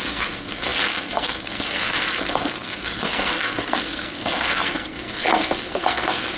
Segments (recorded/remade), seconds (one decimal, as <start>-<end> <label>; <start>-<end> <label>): 0.0-6.4 remade